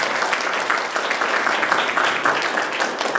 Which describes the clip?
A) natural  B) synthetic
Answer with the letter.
A